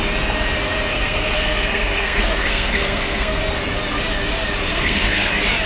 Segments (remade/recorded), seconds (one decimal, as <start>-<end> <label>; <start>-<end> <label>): 0.0-0.9 recorded; 0.9-3.4 remade; 3.4-4.7 recorded; 4.7-5.3 remade; 5.3-5.7 recorded